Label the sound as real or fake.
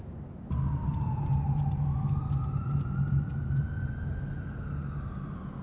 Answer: real